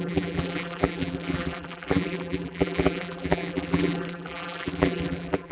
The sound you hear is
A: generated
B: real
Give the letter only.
A